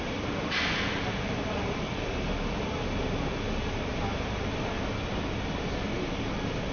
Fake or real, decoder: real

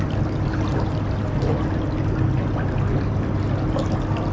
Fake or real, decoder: real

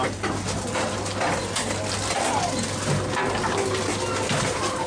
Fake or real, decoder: real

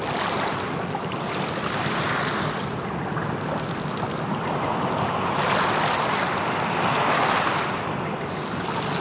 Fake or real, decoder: real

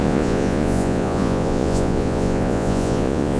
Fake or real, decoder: fake, vocoder, Vocos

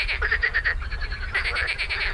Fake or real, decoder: real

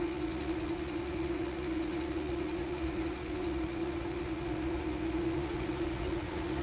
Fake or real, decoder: fake, vocoder, Vocos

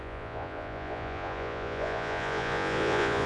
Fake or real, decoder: fake, vocoder, Vocos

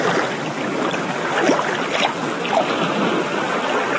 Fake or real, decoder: real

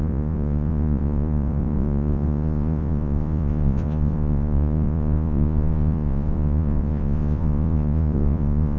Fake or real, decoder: fake, vocoder, Vocos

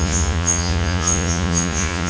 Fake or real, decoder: fake, vocoder, Vocos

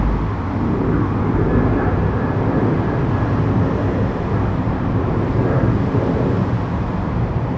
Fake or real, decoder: real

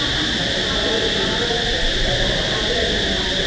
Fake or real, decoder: real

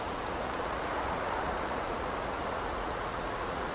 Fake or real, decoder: fake, vocoder, Vocos